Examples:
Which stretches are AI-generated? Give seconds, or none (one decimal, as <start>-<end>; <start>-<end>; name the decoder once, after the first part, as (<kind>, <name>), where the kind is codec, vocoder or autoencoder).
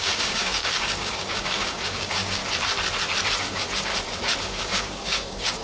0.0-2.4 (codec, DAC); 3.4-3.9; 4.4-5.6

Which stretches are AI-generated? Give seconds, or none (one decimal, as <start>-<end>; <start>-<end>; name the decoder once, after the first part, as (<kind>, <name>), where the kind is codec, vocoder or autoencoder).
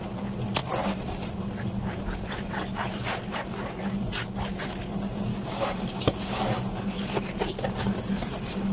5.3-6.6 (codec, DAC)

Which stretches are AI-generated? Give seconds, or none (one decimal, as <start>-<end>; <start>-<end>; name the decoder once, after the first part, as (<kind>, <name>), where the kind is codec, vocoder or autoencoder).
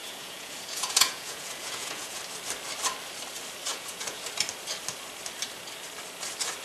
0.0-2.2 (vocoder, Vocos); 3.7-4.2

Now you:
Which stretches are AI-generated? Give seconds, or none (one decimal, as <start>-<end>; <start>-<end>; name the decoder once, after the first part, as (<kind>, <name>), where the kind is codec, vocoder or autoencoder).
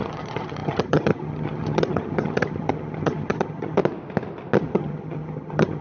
0.0-3.8 (vocoder, HiFi-GAN); 4.6-5.8